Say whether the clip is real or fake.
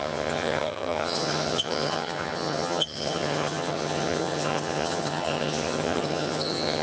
fake